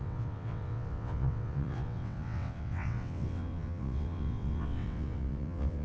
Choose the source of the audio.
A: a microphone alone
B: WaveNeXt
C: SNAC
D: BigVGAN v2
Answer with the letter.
B